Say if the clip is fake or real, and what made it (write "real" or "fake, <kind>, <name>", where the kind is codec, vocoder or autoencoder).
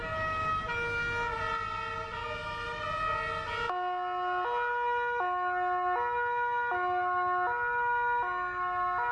real